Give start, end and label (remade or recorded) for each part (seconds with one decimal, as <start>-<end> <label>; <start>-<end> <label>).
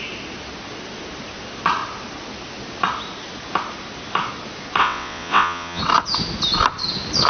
0.0-4.8 recorded; 4.8-5.8 remade; 5.8-7.3 recorded